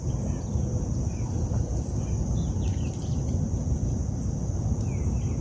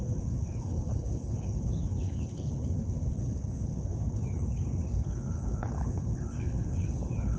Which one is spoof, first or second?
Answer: second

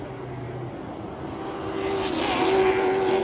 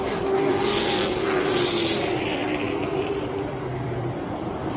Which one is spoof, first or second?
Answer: second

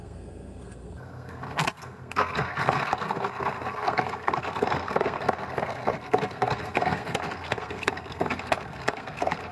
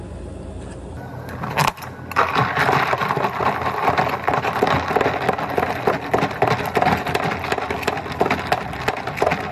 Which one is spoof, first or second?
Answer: first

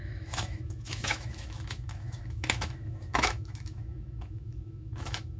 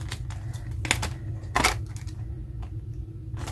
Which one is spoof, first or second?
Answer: first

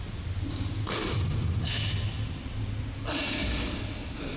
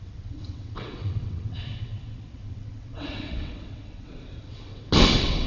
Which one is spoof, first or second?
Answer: second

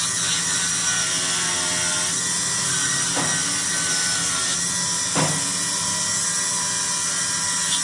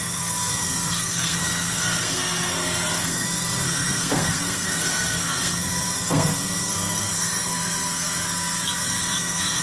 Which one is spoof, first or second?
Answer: second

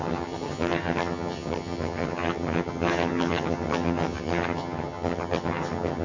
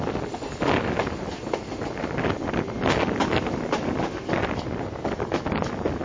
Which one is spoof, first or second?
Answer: first